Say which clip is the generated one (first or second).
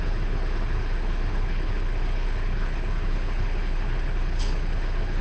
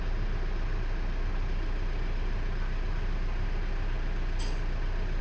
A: first